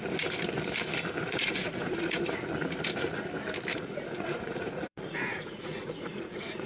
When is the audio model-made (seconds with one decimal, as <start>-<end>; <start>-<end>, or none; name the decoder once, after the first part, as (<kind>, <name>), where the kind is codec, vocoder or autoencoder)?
1.2-2.2 (vocoder, Vocos); 3.7-6.7